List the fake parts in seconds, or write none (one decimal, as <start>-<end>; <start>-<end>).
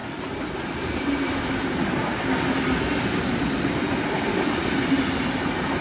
none